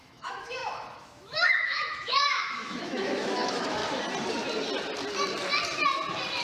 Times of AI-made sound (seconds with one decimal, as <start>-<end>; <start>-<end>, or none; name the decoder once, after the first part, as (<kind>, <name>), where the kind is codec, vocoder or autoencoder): 0.0-3.8 (autoencoder, DAC-VAE)